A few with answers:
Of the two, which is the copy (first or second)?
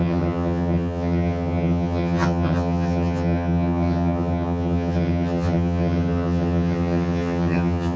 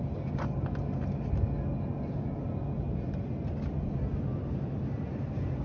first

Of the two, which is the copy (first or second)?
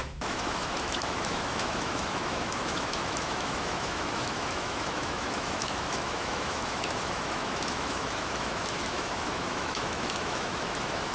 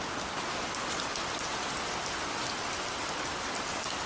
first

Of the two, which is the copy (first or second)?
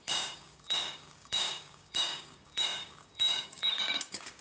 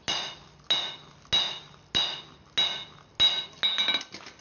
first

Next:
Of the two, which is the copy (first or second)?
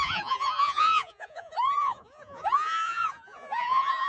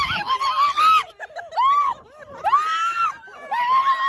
first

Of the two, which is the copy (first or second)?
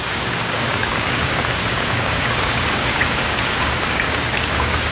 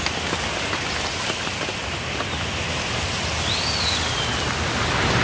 first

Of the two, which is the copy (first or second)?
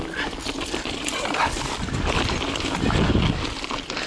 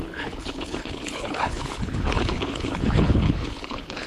second